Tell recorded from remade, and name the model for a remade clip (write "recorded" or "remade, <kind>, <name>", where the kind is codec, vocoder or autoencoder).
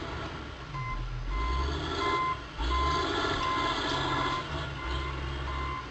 recorded